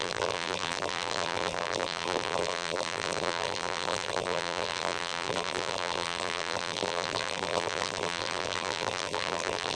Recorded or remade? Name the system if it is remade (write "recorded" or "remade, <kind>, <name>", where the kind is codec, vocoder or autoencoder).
remade, vocoder, BigVGAN v2